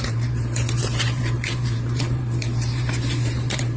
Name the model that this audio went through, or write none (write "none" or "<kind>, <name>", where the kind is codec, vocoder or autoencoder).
vocoder, BigVGAN v2